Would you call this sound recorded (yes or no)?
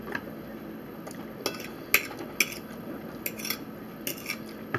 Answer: yes